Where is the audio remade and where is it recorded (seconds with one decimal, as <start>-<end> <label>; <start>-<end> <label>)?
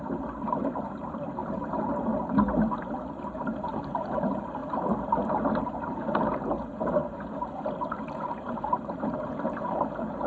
0.0-2.1 remade; 2.1-2.8 recorded; 2.8-4.6 remade; 4.6-5.7 recorded; 5.7-10.3 remade